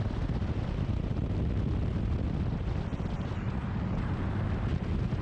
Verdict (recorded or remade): recorded